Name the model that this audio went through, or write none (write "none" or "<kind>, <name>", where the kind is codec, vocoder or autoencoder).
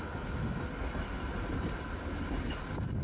none